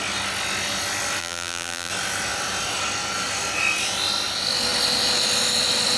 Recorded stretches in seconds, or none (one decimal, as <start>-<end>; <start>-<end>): 0.0-1.2; 1.9-6.0

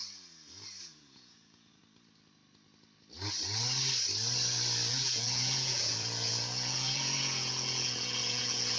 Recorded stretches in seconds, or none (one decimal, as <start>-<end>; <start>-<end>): 0.0-0.8; 1.8-4.9

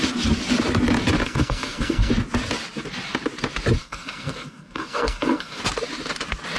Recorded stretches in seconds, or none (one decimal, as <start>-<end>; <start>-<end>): 0.0-1.2; 2.1-3.8; 5.6-6.6

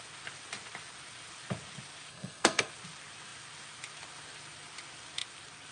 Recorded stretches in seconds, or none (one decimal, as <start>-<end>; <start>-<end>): 0.0-2.1; 2.7-5.7

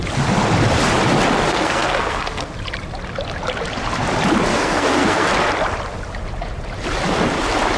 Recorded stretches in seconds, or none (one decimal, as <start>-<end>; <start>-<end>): 0.0-1.5; 2.5-4.5; 5.3-7.8

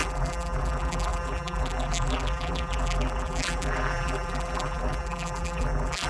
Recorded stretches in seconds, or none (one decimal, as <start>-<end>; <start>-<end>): none